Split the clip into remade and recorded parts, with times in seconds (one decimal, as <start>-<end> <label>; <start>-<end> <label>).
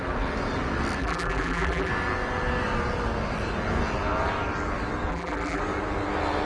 0.0-1.0 recorded; 1.0-1.9 remade; 1.9-5.1 recorded; 5.1-5.6 remade; 5.6-6.5 recorded